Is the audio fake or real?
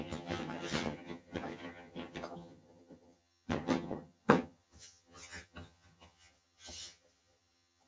fake